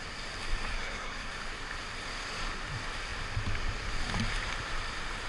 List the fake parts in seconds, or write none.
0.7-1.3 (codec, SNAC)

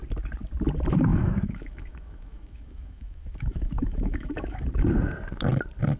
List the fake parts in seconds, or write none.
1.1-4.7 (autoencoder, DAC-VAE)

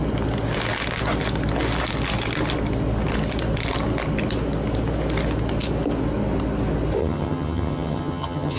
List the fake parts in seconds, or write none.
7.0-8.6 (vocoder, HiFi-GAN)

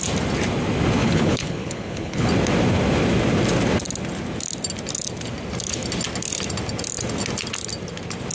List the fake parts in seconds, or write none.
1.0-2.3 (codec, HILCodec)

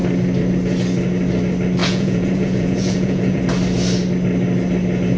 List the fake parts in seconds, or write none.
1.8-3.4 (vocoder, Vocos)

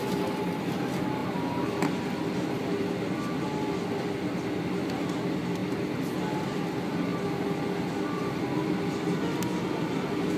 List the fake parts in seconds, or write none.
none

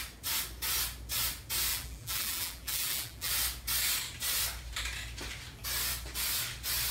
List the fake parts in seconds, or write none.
1.7-3.3 (vocoder, BigVGAN v2)